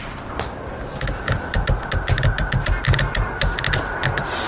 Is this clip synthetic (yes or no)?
no